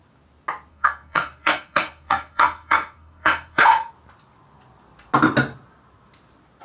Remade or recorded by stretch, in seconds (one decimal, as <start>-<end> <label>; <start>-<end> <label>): 0.0-0.7 recorded; 0.7-3.9 remade; 3.9-6.6 recorded